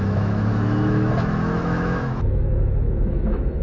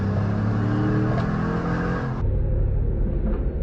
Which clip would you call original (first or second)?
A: second